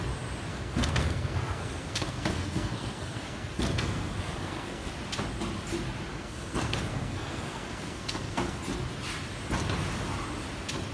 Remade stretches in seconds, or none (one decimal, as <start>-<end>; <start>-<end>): 0.5-4.9; 6.1-8.6